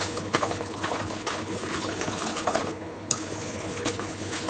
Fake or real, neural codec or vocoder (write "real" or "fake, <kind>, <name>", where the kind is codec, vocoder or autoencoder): fake, codec, HILCodec